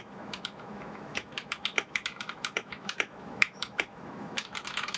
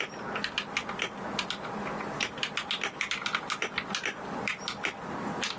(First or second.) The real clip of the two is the second